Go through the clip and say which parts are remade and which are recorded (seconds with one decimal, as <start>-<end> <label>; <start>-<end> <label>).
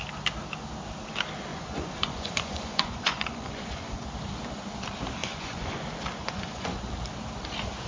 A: 0.0-1.5 recorded; 1.5-4.1 remade; 4.1-5.2 recorded; 5.2-5.8 remade; 5.8-6.2 recorded; 6.2-6.9 remade; 6.9-7.9 recorded